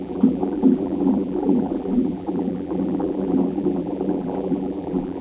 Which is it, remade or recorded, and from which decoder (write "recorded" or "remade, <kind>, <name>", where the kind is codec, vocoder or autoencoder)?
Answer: remade, vocoder, BigVGAN v2